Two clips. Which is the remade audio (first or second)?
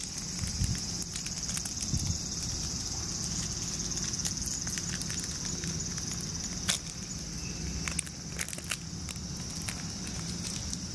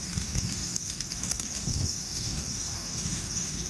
second